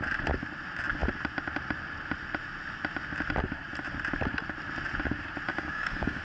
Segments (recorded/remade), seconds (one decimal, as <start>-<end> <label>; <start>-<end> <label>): 0.0-5.5 recorded; 5.5-6.2 remade